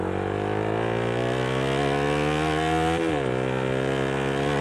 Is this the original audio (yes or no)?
yes